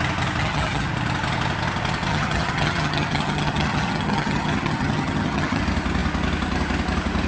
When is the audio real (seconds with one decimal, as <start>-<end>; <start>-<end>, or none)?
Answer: 0.0-0.4; 0.9-2.1; 5.6-7.3